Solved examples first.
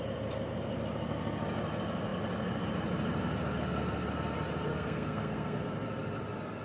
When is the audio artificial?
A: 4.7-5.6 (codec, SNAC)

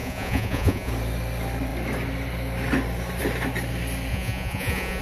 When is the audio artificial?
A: 0.0-0.9 (vocoder, Vocos); 4.1-5.0

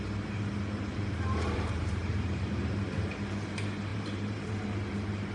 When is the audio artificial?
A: 0.9-3.5 (vocoder, BigVGAN v2); 3.9-4.5